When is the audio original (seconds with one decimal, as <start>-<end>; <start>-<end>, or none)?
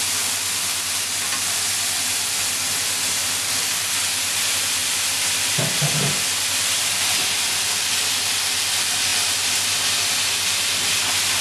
0.0-11.4